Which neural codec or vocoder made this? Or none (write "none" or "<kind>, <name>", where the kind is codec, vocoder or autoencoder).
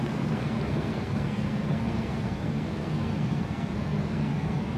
codec, SNAC